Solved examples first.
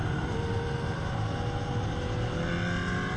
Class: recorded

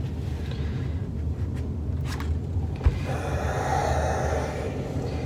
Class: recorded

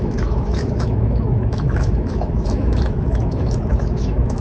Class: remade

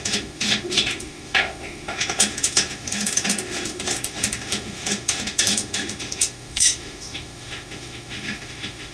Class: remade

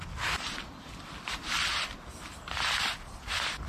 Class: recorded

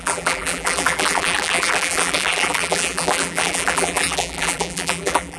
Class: remade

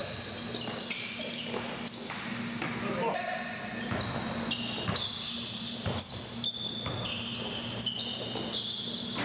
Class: recorded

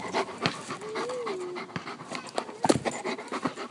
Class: recorded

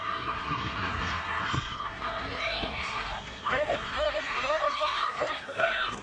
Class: remade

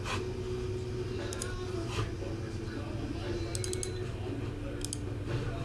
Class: recorded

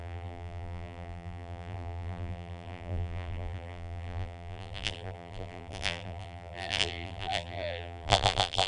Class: remade